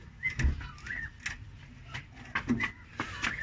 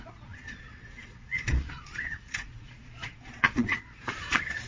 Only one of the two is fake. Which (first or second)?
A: second